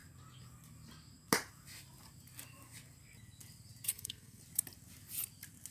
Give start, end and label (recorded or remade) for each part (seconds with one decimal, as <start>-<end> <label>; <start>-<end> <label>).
0.0-3.9 recorded; 3.9-4.4 remade; 4.4-5.7 recorded